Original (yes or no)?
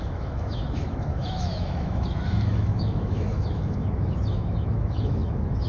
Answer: no